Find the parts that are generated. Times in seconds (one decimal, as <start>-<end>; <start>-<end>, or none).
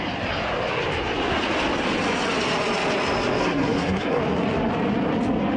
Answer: 3.4-4.2